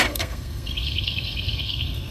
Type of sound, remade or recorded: remade